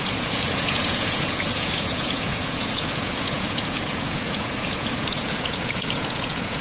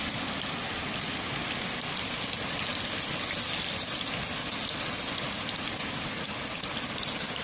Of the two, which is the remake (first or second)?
first